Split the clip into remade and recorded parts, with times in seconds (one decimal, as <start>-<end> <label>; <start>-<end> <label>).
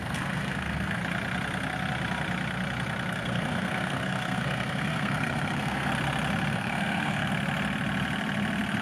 0.0-1.0 remade; 1.0-3.1 recorded; 3.1-5.9 remade; 5.9-6.5 recorded; 6.5-7.3 remade; 7.3-8.8 recorded